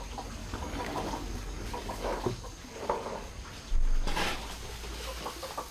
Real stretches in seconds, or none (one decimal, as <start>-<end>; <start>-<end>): 0.0-0.4; 3.3-5.7